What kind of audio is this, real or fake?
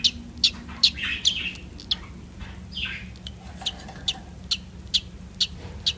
real